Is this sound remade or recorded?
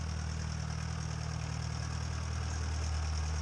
recorded